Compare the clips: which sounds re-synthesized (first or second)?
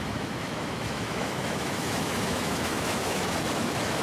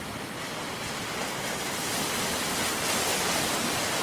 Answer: first